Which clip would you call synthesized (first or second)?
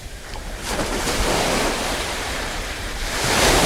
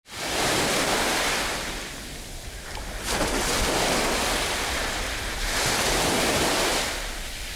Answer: first